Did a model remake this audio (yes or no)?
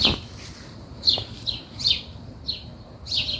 no